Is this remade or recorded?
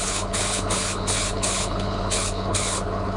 remade